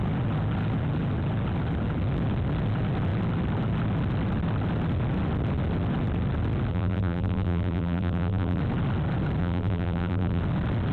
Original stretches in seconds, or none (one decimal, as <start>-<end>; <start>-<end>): 0.0-6.7; 8.6-9.4; 10.4-10.9